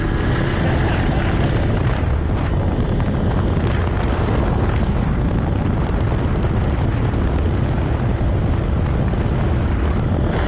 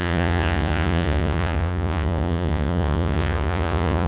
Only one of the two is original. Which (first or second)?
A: first